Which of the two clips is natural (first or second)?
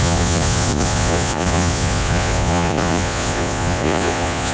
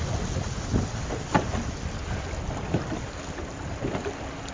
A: second